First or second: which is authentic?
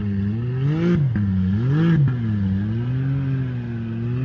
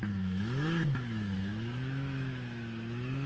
first